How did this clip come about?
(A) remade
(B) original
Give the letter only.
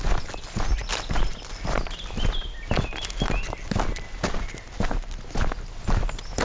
B